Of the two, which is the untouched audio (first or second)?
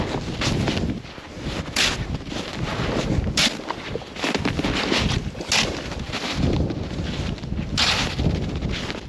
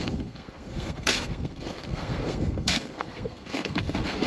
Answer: first